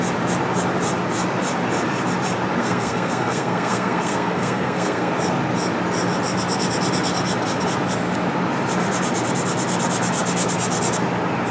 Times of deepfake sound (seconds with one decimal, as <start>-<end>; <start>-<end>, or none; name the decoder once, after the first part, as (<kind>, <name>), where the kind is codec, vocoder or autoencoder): 2.6-5.1 (codec, SNAC)